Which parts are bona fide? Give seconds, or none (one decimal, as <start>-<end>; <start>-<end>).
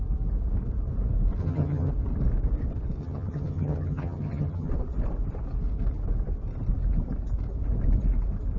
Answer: 0.0-1.4; 1.9-3.0; 4.7-8.6